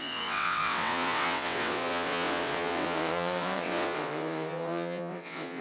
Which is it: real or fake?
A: fake